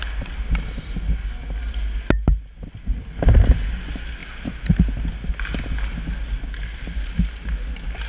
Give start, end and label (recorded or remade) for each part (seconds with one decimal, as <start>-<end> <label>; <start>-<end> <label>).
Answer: 0.0-8.1 recorded